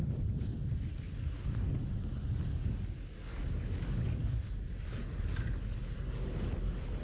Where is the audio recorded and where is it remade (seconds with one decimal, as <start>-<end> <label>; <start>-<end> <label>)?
0.0-2.5 recorded; 2.5-4.4 remade; 4.4-7.0 recorded